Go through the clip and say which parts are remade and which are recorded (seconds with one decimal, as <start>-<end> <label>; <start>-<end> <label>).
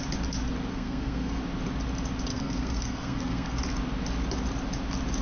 0.0-0.7 recorded; 0.7-1.4 remade; 1.4-2.3 recorded; 2.3-3.6 remade; 3.6-5.2 recorded